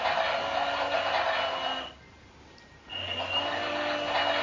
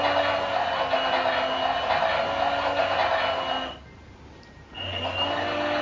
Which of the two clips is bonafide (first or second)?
second